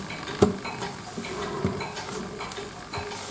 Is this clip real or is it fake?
real